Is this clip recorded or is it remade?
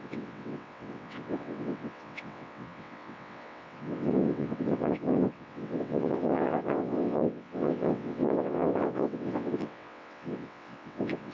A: remade